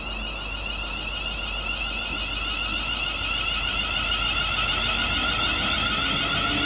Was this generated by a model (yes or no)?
no